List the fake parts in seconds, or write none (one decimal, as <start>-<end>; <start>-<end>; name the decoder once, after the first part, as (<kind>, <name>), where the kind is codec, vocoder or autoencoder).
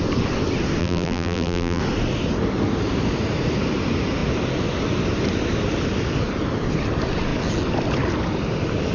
0.8-1.8 (vocoder, BigVGAN v2)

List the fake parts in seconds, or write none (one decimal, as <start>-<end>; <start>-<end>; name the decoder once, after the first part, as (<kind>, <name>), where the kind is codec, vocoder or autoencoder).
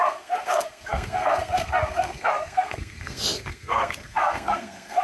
0.0-5.0 (codec, SNAC)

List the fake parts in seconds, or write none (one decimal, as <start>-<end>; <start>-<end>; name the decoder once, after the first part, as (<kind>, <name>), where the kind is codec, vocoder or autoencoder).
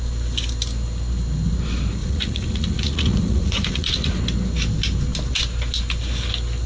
2.0-4.2 (vocoder, Vocos)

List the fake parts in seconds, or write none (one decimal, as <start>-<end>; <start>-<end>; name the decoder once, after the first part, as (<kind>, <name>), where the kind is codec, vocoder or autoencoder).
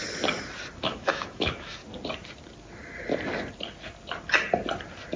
0.8-1.8 (autoencoder, DAC-VAE)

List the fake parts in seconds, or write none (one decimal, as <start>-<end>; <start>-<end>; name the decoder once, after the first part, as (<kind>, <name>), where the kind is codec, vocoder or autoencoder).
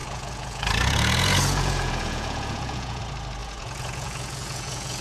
0.0-3.0 (vocoder, Vocos); 3.4-5.0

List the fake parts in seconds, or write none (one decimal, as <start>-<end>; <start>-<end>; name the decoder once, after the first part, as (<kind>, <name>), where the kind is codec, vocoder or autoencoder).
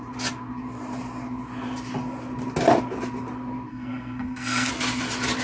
3.7-4.7 (codec, SNAC)